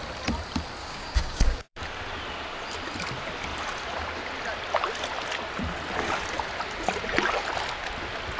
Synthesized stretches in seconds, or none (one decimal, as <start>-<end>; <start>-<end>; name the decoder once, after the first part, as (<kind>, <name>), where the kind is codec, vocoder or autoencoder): 0.8-1.8 (codec, DAC)